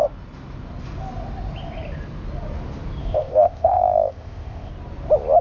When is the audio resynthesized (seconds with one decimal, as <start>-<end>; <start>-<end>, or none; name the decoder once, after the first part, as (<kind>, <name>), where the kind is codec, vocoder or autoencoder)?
3.0-4.7 (codec, ZipCodec)